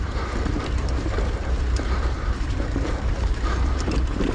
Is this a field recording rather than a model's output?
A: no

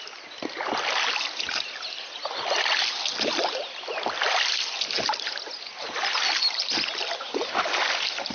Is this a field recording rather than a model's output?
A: yes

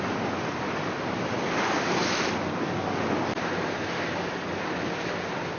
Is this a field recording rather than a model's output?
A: yes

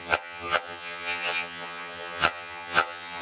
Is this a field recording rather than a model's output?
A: no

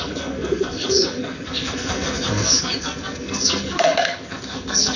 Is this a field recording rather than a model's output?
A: no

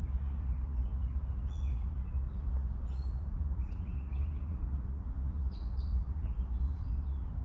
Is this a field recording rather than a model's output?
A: no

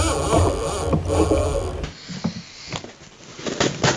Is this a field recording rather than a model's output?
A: yes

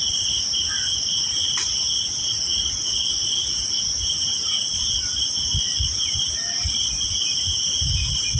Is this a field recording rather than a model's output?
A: yes